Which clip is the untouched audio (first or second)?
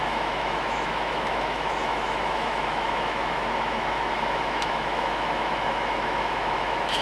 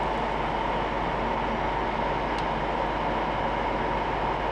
second